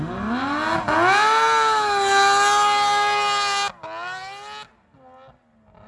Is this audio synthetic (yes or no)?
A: no